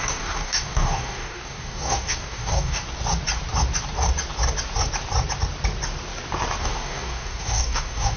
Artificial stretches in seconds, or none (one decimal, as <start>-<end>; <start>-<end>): 0.0-2.8; 6.6-8.2